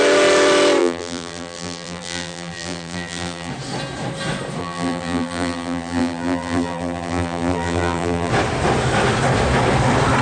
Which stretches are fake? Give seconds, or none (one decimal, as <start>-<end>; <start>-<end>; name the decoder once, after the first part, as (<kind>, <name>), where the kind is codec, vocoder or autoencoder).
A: 0.8-3.5 (vocoder, BigVGAN v2); 4.6-8.3